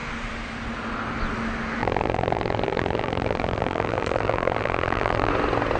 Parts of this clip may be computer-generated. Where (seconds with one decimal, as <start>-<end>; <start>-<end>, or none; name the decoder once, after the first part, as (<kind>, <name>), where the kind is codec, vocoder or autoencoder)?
1.8-5.3 (vocoder, BigVGAN v2)